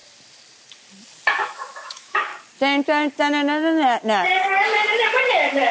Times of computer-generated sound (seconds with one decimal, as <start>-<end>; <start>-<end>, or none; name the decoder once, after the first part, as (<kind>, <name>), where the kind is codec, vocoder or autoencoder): 1.3-2.3 (autoencoder, DAC-VAE); 5.3-5.7